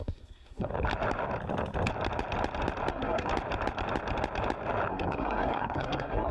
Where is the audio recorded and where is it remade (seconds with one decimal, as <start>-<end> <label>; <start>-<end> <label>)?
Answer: 0.0-0.7 remade; 0.7-2.9 recorded; 2.9-3.3 remade; 3.3-4.9 recorded; 4.9-6.3 remade